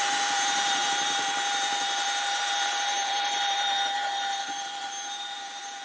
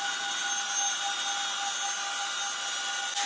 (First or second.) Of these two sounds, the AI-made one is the first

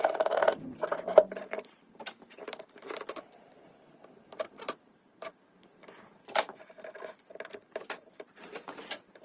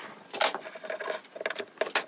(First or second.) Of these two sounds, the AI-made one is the first